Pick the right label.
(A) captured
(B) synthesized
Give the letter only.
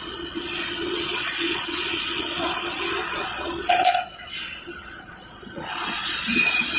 B